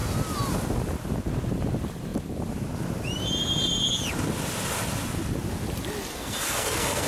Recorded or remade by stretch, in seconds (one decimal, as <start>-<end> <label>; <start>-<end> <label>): 0.0-6.1 recorded; 6.1-7.1 remade